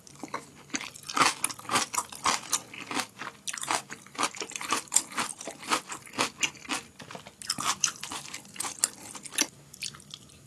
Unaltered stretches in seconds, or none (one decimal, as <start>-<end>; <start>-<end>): 0.0-10.5